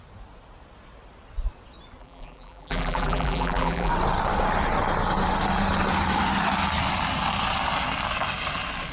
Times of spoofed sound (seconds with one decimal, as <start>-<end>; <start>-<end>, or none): 2.0-3.9